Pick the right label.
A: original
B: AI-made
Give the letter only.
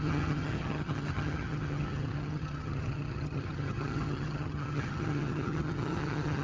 B